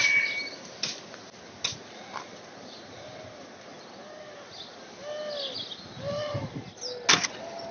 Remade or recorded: recorded